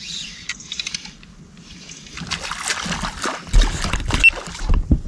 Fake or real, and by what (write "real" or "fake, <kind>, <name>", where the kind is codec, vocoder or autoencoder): real